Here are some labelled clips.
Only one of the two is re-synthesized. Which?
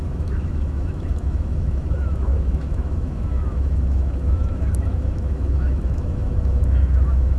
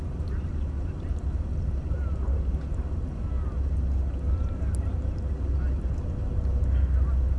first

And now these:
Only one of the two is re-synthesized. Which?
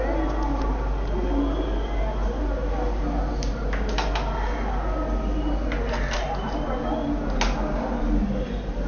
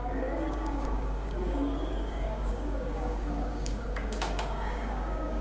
second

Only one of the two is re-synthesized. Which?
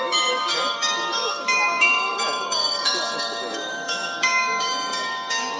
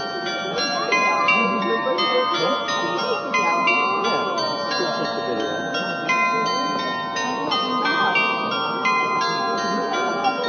first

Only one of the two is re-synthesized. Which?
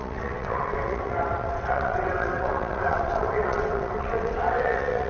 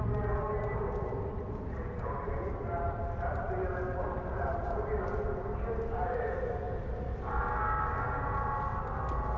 first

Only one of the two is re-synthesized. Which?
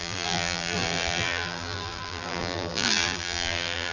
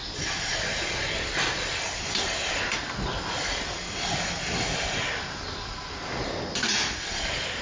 first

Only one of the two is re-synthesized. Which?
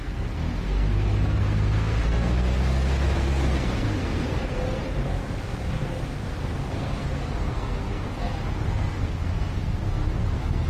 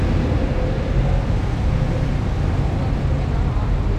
first